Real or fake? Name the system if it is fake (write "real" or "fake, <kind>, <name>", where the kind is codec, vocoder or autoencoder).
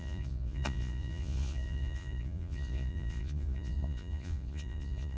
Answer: fake, vocoder, Vocos